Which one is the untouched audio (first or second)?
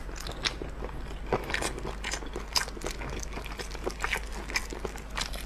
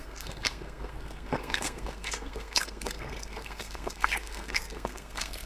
first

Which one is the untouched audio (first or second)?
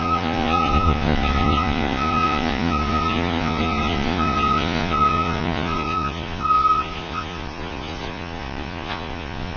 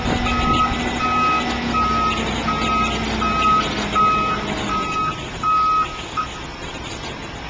second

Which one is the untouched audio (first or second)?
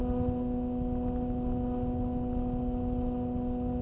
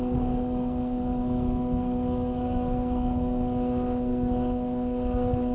first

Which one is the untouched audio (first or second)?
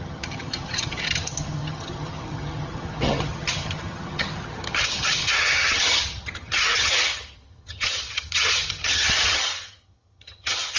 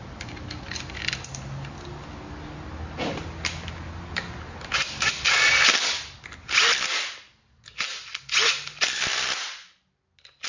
second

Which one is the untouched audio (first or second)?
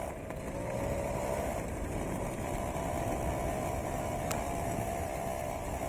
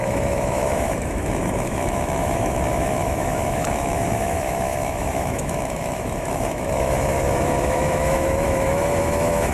first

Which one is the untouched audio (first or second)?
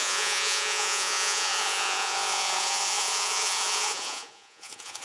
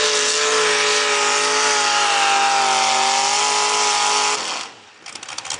second